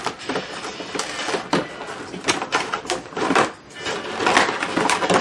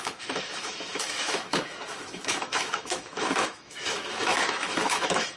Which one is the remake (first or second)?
second